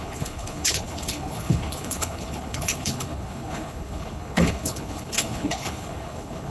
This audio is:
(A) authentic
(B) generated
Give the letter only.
B